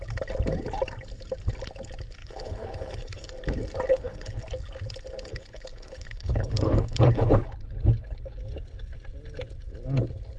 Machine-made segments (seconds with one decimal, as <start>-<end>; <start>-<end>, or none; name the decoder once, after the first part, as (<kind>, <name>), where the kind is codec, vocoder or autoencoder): 2.2-3.3 (codec, HILCodec); 3.9-4.4; 5.3-8.4